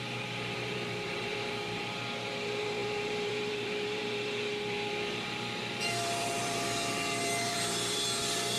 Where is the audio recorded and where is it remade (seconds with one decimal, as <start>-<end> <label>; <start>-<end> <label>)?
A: 0.0-8.6 remade